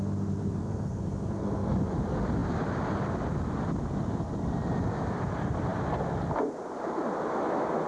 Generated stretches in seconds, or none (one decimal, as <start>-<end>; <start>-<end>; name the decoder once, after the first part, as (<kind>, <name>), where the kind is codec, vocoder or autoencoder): 0.6-1.7 (codec, SNAC)